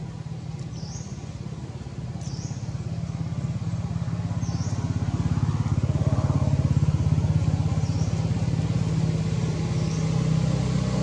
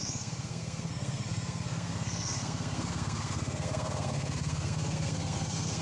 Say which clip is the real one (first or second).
first